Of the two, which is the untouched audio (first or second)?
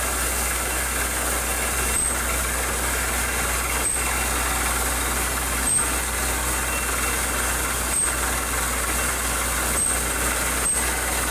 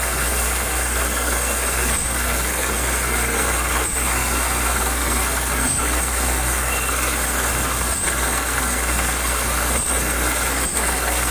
first